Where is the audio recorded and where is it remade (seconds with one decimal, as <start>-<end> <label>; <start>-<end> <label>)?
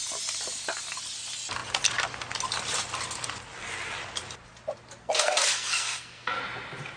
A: 0.0-5.0 recorded; 5.0-6.4 remade; 6.4-7.0 recorded